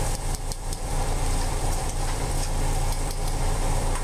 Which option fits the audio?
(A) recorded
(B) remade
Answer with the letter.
B